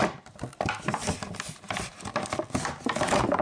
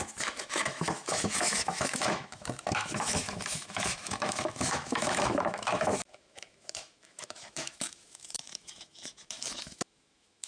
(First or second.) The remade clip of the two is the second